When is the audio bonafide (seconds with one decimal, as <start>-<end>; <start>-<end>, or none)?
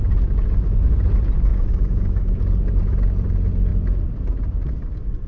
0.0-1.5; 2.4-5.3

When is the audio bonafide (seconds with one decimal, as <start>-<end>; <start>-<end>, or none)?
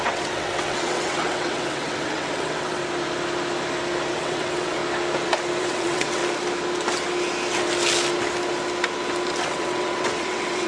2.8-4.1; 4.8-5.6; 6.2-9.4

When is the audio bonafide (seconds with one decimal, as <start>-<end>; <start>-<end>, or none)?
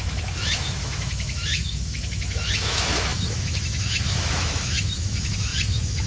none